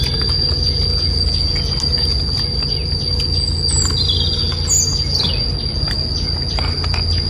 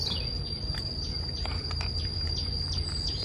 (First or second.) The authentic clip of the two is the first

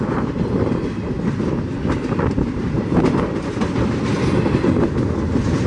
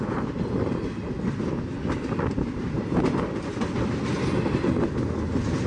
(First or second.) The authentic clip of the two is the second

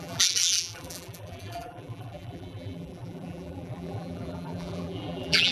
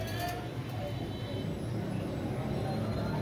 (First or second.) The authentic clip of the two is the second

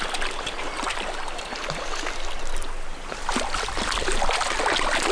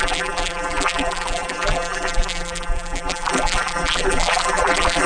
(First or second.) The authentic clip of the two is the first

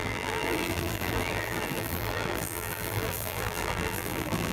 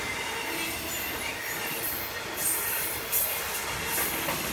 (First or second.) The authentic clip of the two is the second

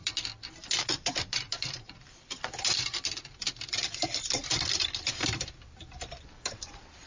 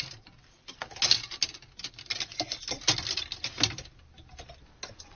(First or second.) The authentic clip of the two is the second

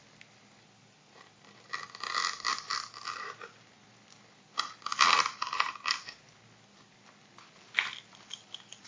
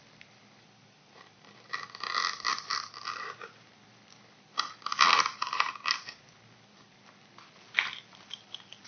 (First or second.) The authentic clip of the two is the first